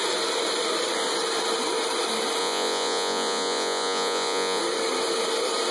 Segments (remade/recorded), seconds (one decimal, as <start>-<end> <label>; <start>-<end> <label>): 0.0-2.4 recorded; 2.4-4.6 remade; 4.6-5.7 recorded

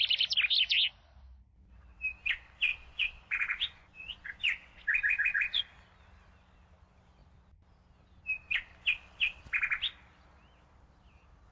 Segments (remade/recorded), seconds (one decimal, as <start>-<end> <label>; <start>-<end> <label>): 0.0-2.7 recorded; 2.7-5.6 remade; 5.6-11.5 recorded

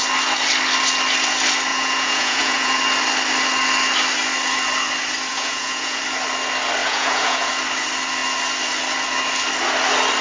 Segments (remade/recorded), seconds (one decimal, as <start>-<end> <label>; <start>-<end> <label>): 0.0-1.7 recorded; 1.7-2.8 remade; 2.8-5.3 recorded; 5.3-6.0 remade; 6.0-6.8 recorded; 6.8-7.5 remade; 7.5-10.2 recorded

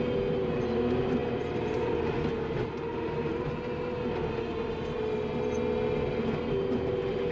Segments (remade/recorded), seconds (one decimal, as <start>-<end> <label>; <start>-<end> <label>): 0.0-7.3 recorded

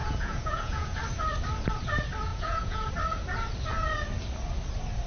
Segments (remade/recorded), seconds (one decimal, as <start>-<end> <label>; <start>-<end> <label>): 0.0-1.0 remade; 1.0-2.3 recorded; 2.3-2.9 remade; 2.9-5.1 recorded

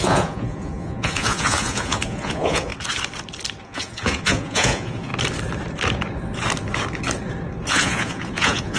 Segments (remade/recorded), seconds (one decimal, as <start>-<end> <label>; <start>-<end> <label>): 0.0-2.7 remade; 2.7-3.6 recorded; 3.6-5.1 remade; 5.1-7.7 recorded; 7.7-8.8 remade

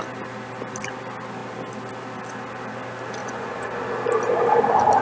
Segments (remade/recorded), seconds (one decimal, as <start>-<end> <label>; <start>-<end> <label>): 0.0-3.2 recorded; 3.2-3.8 remade; 3.8-5.0 recorded

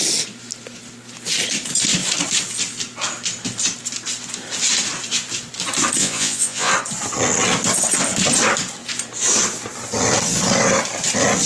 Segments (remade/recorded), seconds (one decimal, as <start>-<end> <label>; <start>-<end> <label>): 0.0-6.0 recorded; 6.0-6.7 remade; 6.7-11.5 recorded